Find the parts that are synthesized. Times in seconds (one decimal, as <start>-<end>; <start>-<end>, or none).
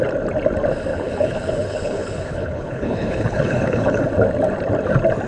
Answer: 0.9-4.0